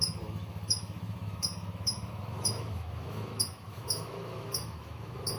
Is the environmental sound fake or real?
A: fake